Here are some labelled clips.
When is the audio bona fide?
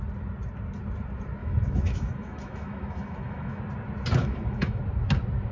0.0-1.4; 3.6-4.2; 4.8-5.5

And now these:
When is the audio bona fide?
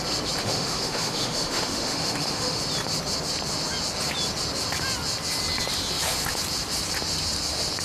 0.0-0.4; 2.6-7.8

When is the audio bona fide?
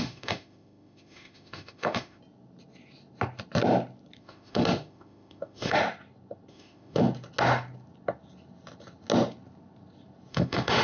2.2-4.2; 5.8-6.5; 7.0-10.3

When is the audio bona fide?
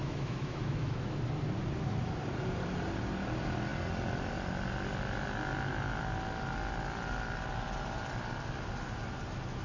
1.2-9.6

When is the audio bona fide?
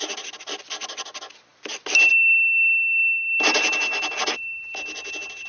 0.0-5.5